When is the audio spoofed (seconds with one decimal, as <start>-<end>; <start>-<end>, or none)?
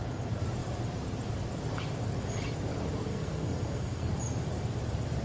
3.1-4.1